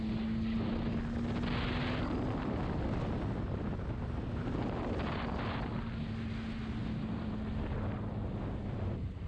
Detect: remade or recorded recorded